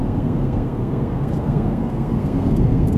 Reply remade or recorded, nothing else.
remade